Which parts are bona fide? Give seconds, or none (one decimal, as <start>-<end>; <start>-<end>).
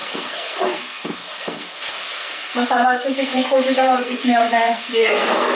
none